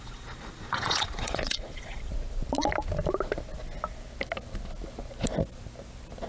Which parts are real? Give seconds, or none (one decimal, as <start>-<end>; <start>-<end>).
2.1-6.3